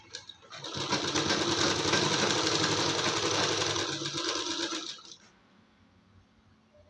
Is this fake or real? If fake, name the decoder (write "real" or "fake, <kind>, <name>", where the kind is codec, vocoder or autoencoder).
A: real